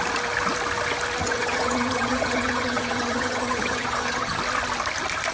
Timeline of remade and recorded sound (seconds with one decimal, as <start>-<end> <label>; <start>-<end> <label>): 0.0-1.2 recorded; 1.2-4.4 remade; 4.4-5.3 recorded